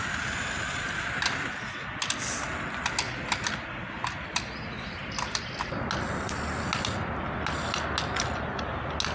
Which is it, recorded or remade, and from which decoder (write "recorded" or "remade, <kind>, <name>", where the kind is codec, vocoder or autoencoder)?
recorded